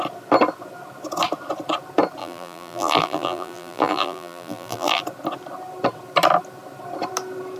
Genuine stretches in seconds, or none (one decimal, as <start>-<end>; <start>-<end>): 0.0-2.2; 5.0-7.6